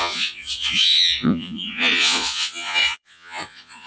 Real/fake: fake